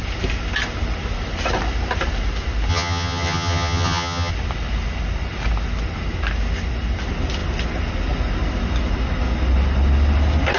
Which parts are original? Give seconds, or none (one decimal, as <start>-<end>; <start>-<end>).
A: 0.0-2.7; 4.3-10.6

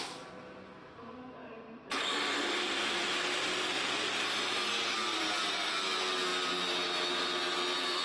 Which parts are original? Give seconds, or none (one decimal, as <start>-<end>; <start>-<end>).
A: 0.0-1.4; 2.2-5.1; 5.7-8.0

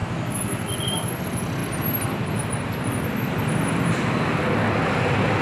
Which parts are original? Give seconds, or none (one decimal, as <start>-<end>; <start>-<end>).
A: 0.0-5.4

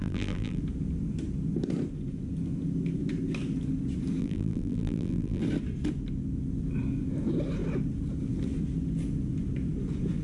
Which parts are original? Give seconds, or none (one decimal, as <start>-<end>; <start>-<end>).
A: 0.6-4.2; 5.4-10.2

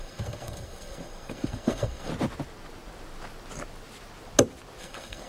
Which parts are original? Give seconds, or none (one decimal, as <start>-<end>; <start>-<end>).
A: 2.1-4.8

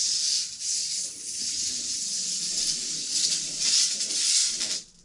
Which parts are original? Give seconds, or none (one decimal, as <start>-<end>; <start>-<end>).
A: 0.0-0.8; 1.4-2.5; 4.2-5.0